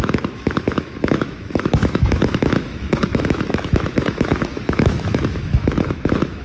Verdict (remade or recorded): remade